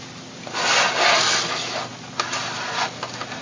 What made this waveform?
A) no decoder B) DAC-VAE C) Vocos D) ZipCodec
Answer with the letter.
A